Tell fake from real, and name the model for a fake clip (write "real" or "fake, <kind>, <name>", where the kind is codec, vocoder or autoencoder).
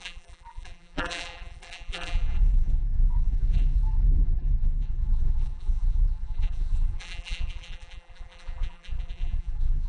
fake, vocoder, BigVGAN v2